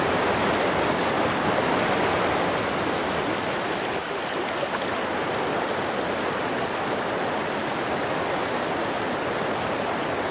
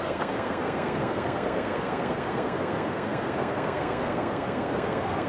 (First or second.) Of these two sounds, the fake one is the second